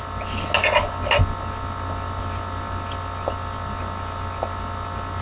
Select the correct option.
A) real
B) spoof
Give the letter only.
A